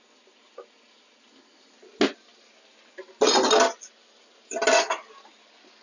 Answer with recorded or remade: recorded